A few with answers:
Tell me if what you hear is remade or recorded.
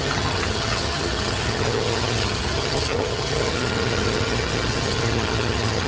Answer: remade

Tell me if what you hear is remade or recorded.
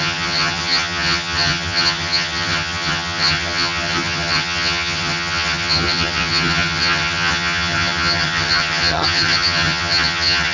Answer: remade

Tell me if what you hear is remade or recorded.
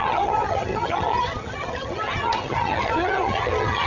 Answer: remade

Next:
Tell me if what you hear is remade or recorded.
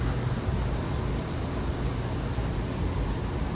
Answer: recorded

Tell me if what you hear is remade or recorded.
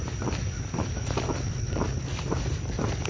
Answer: recorded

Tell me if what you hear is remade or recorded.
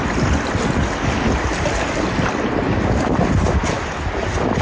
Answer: recorded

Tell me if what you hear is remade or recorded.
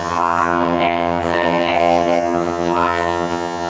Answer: remade